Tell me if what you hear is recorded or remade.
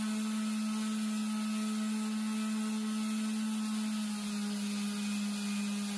recorded